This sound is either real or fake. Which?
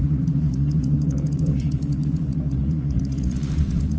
fake